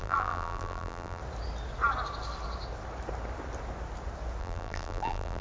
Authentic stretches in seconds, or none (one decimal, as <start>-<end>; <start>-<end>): 1.2-4.4